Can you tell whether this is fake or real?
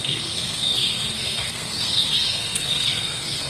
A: fake